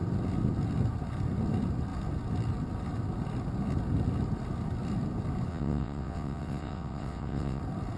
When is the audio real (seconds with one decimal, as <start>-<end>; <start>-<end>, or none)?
0.0-5.5; 7.6-8.0

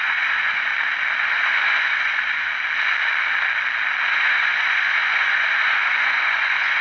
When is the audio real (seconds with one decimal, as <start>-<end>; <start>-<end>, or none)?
0.7-1.2; 2.5-4.1

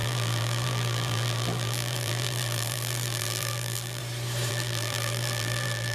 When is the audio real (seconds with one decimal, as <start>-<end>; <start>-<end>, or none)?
4.0-4.5

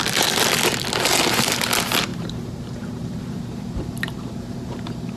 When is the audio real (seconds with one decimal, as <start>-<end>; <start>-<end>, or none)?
0.0-2.1

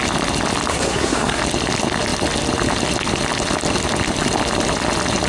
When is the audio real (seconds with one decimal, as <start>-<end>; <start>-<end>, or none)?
0.0-0.7; 1.4-5.3

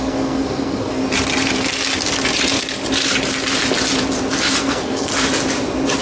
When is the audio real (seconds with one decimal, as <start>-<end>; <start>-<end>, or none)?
1.0-4.6; 5.1-6.0